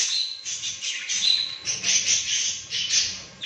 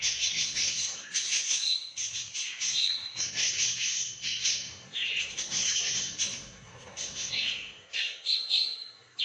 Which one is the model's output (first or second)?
second